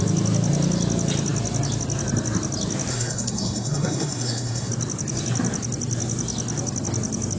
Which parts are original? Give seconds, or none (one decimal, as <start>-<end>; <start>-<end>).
0.0-2.9; 4.7-7.4